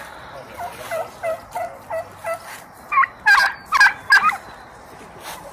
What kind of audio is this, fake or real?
real